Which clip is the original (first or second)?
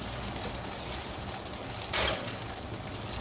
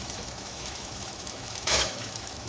first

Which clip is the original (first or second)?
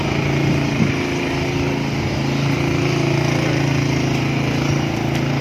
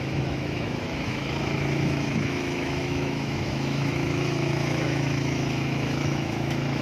first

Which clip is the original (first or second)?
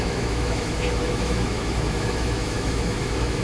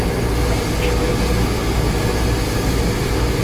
second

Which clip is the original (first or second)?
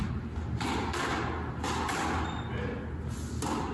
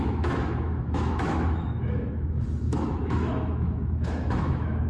first